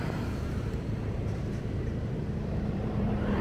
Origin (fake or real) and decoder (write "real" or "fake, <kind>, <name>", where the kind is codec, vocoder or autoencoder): fake, vocoder, BigVGAN v2